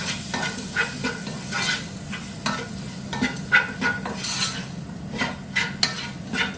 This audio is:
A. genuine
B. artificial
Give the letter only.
A